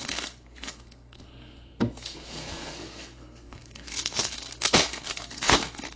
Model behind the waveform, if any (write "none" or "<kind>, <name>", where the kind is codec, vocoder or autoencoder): codec, SNAC